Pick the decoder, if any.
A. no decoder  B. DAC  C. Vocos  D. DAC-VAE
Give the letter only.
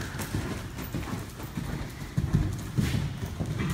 A